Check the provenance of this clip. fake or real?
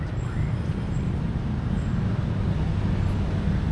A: real